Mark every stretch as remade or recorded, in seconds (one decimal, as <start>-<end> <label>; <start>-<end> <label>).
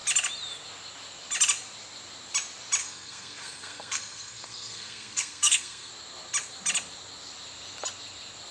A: 0.0-2.8 recorded; 2.8-5.9 remade; 5.9-8.5 recorded